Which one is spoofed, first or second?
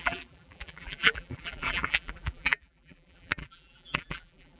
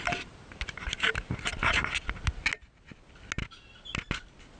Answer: first